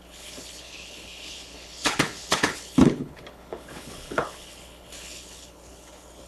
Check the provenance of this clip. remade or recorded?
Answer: remade